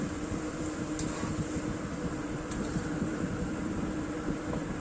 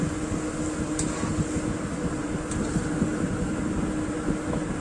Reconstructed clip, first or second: first